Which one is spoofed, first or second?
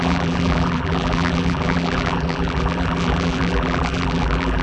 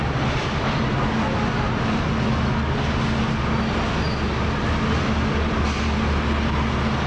first